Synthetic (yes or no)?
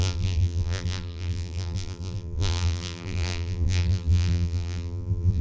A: yes